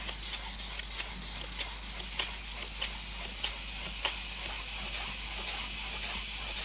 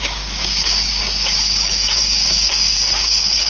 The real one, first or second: first